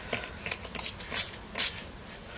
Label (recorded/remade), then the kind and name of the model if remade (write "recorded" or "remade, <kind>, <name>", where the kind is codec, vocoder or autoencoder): recorded